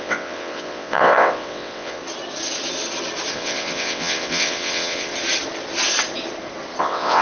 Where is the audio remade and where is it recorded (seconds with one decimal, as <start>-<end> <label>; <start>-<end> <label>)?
0.0-2.0 remade; 2.0-3.3 recorded; 3.3-5.1 remade; 5.1-6.8 recorded; 6.8-7.2 remade